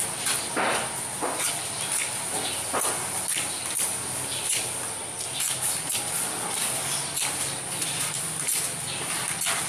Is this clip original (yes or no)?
yes